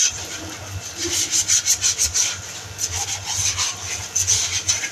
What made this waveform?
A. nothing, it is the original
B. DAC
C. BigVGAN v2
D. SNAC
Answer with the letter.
A